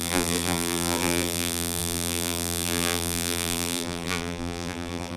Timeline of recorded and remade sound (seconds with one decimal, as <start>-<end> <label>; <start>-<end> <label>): 0.0-5.2 remade